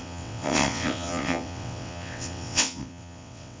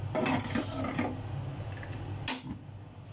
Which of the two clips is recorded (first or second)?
second